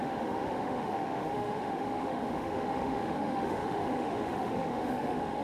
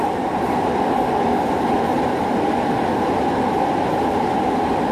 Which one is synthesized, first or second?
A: first